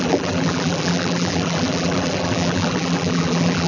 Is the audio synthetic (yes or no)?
yes